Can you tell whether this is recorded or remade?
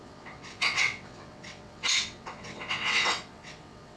remade